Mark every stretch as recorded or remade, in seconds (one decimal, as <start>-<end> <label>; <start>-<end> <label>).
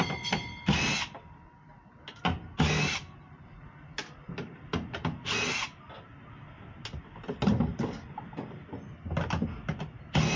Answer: 0.0-10.4 recorded